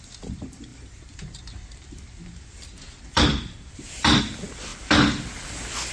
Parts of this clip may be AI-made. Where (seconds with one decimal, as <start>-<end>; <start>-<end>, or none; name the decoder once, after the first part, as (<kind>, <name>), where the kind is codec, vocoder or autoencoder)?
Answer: 0.7-4.2 (vocoder, BigVGAN v2); 4.7-5.2